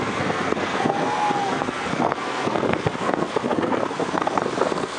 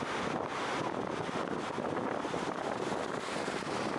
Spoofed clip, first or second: first